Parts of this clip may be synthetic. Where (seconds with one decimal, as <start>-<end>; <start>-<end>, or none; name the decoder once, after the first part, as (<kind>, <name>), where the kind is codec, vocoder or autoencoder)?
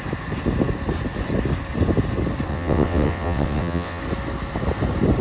2.5-4.0 (vocoder, WaveNeXt)